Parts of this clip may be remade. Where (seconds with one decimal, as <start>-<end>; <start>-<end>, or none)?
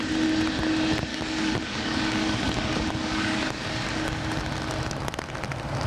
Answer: 1.1-4.4